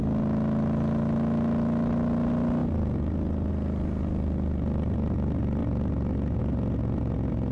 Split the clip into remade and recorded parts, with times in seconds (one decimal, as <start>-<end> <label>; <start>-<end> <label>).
0.0-7.5 recorded